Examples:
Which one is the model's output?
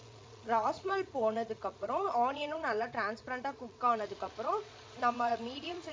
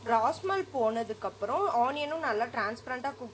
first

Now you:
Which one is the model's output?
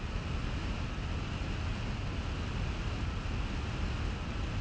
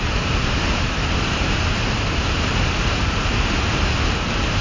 second